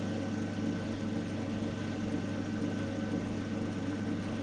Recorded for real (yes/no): yes